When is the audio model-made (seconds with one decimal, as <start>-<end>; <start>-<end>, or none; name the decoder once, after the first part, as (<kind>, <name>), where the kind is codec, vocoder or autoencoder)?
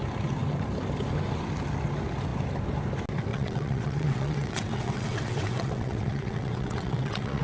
3.3-7.4 (vocoder, WaveNeXt)